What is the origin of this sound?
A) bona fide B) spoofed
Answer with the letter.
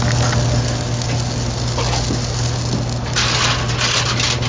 A